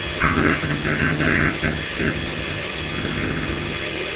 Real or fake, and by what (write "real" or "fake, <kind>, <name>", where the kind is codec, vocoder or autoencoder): fake, vocoder, HiFi-GAN